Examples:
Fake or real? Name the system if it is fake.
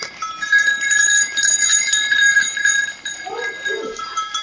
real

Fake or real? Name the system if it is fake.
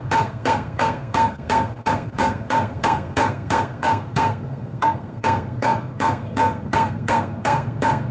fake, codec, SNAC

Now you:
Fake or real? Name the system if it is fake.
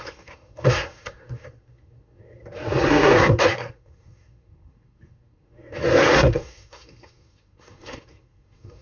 fake, codec, SNAC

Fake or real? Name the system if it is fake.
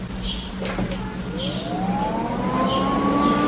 real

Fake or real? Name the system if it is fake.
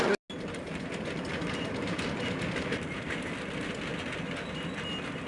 real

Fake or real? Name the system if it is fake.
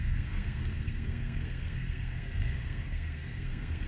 fake, codec, SNAC